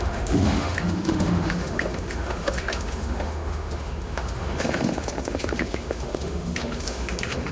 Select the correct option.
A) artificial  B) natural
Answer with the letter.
A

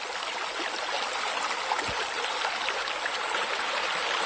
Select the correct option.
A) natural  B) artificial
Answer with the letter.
A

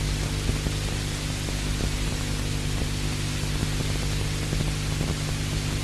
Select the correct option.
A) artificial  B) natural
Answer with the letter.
B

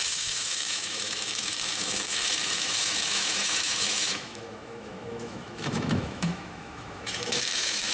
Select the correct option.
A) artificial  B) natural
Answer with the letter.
A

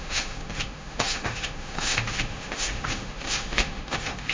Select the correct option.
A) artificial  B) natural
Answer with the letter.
A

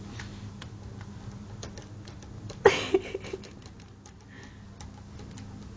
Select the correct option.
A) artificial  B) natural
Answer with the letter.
B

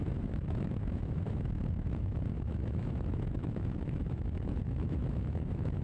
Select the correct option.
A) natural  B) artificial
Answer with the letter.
B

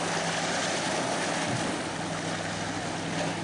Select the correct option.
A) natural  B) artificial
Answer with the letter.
A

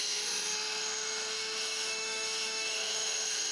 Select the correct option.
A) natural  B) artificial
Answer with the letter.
B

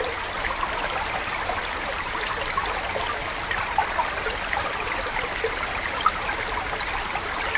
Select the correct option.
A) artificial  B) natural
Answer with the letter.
B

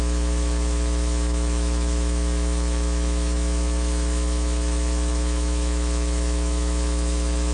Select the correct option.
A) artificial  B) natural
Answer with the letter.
A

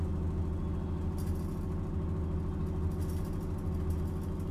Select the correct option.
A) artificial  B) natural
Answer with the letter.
B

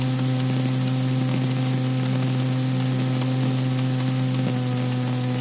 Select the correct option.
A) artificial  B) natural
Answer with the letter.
B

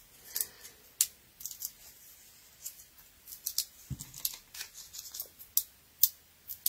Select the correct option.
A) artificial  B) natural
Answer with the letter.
B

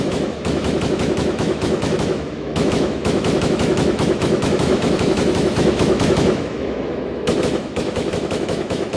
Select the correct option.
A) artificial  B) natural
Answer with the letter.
A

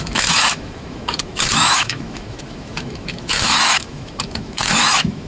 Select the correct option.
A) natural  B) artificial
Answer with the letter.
B